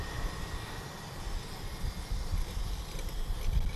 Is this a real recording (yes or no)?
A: yes